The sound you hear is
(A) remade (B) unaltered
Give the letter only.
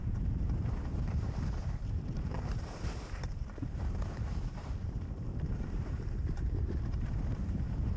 A